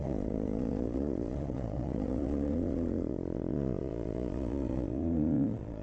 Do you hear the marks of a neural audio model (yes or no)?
yes